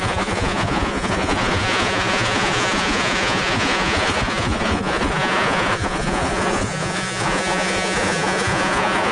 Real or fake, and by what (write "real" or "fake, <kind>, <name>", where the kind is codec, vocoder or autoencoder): fake, vocoder, Vocos